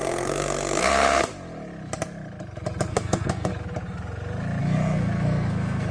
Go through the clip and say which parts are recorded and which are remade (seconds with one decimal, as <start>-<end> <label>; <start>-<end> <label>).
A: 0.0-1.3 remade; 1.3-2.9 recorded; 2.9-3.5 remade; 3.5-4.6 recorded; 4.6-5.9 remade